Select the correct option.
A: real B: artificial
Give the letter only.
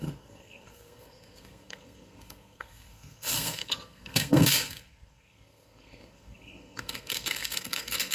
B